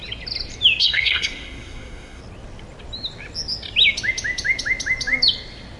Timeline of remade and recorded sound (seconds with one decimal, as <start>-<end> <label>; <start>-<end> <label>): 0.0-0.8 recorded; 0.8-2.2 remade; 2.2-5.8 recorded